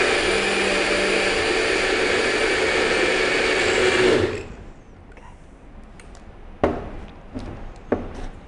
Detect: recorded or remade recorded